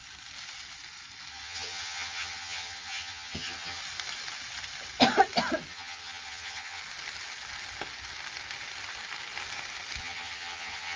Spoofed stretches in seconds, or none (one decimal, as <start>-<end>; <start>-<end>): 1.3-3.8; 5.7-6.8; 10.0-11.0